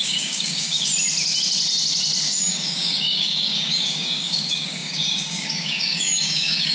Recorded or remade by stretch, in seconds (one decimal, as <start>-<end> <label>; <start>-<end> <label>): 0.0-0.9 remade; 0.9-2.2 recorded; 2.2-6.7 remade